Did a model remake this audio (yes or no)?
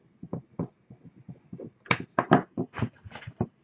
no